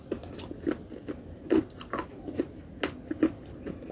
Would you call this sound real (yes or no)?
yes